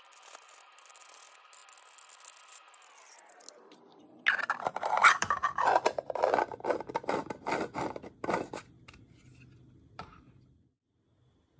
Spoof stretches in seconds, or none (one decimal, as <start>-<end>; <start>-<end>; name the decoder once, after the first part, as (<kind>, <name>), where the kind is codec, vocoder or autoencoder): none